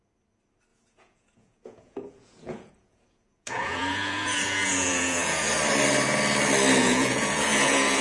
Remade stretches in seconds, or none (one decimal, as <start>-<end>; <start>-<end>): 0.7-5.5; 6.8-8.0